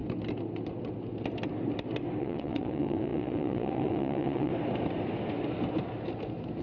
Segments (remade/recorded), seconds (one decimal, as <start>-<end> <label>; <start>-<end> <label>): 0.0-2.2 recorded; 2.2-4.5 remade; 4.5-6.6 recorded